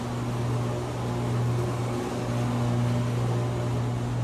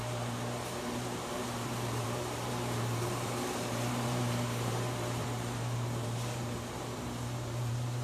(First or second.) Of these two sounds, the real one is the first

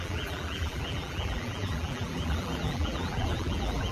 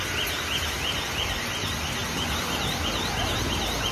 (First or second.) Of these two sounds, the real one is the second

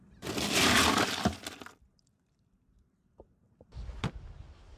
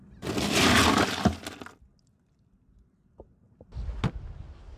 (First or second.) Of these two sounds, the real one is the second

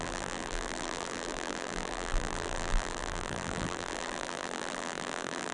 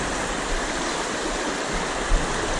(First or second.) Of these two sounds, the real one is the second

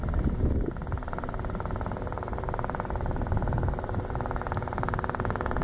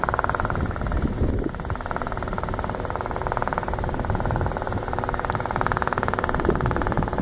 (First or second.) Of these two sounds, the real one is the first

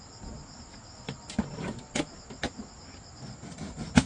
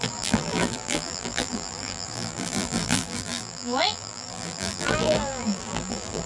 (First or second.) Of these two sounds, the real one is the first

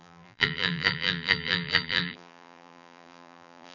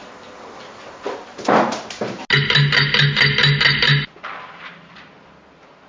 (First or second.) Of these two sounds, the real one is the second